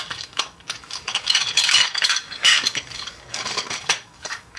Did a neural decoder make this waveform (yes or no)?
yes